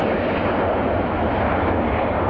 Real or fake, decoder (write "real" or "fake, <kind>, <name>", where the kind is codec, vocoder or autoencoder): real